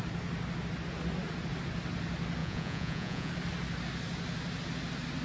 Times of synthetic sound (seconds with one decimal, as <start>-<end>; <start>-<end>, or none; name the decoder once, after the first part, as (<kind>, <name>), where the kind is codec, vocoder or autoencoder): 2.4-3.3 (vocoder, Vocos)